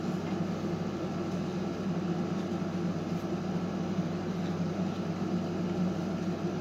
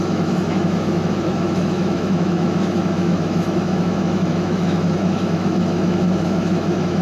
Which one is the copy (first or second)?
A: second